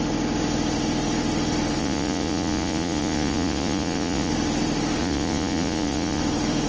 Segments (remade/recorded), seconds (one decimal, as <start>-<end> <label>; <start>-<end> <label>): 0.0-1.8 recorded; 1.8-4.3 remade; 4.3-5.0 recorded; 5.0-6.2 remade; 6.2-6.7 recorded

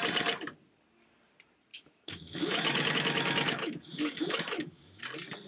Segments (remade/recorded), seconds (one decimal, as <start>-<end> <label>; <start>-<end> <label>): 0.0-1.7 recorded; 1.7-5.0 remade; 5.0-5.5 recorded